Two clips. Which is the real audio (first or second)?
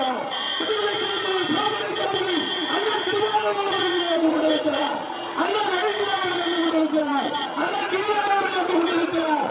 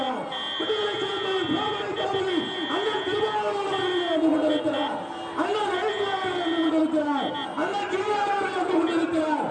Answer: second